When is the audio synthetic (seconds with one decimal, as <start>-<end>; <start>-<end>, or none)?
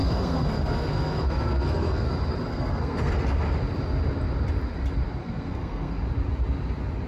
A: 0.0-2.1; 2.5-3.1; 5.2-6.0